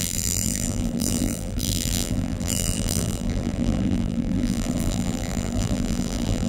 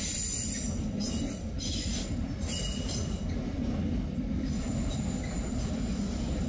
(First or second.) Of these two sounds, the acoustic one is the second